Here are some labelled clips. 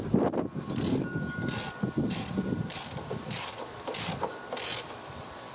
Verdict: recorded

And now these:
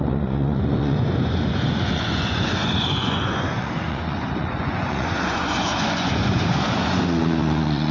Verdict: remade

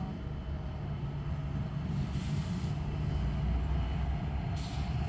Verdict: recorded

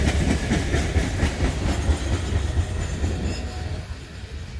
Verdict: recorded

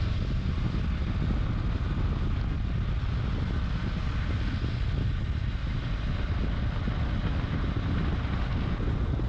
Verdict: recorded